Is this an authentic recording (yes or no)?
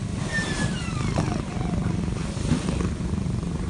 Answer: yes